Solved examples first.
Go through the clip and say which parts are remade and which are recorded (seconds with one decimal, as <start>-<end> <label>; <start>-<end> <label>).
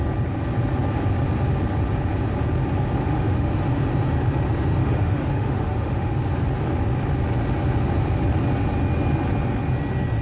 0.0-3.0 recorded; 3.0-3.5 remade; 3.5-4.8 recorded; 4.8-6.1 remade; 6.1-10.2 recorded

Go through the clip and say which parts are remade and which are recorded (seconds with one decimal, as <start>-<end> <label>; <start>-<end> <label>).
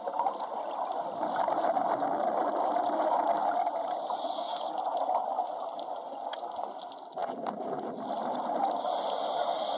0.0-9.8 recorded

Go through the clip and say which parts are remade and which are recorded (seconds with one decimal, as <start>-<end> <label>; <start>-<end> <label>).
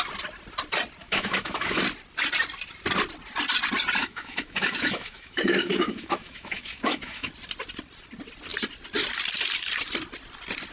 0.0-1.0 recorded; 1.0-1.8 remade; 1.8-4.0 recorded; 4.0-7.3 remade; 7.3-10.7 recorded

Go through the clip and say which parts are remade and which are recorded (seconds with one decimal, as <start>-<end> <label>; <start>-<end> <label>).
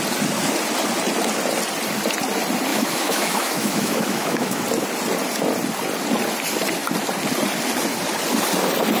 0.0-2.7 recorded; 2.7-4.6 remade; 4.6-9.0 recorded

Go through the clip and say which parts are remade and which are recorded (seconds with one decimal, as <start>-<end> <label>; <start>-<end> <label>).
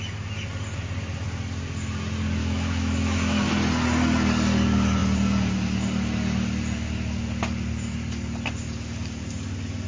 0.0-2.4 recorded; 2.4-3.5 remade; 3.5-9.9 recorded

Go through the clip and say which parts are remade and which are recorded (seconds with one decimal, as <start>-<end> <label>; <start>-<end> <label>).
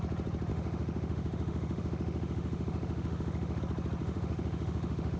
0.0-0.5 recorded; 0.5-3.6 remade; 3.6-4.0 recorded; 4.0-5.2 remade